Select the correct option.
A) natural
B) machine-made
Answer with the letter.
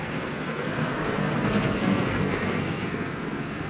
B